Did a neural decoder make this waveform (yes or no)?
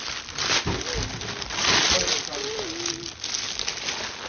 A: no